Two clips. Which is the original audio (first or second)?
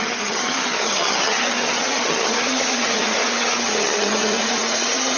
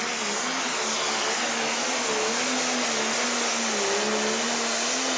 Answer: second